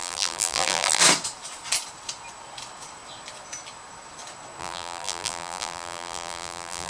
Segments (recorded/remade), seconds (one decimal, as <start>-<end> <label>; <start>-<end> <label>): 0.0-1.0 remade; 1.0-4.6 recorded; 4.6-6.9 remade